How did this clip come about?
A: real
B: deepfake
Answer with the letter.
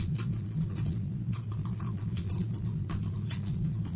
B